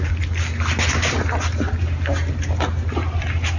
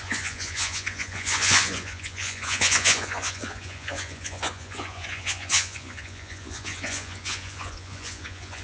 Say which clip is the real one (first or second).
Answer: first